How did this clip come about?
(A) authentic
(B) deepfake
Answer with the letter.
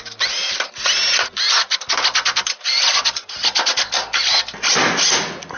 A